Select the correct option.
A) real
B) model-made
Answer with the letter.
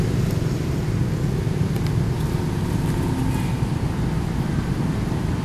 A